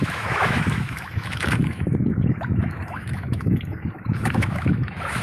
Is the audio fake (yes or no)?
yes